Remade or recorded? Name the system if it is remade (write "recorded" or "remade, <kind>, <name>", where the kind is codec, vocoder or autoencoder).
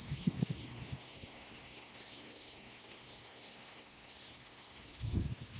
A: remade, codec, SNAC